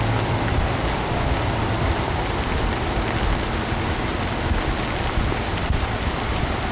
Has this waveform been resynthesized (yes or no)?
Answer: no